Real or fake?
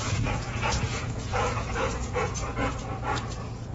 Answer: fake